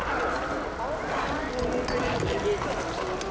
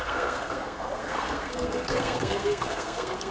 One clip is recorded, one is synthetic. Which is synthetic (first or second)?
second